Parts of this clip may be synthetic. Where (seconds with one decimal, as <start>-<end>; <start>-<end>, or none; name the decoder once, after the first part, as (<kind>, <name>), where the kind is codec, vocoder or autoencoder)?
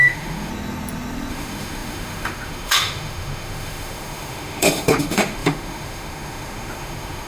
0.0-0.5 (autoencoder, DAC-VAE); 1.3-7.3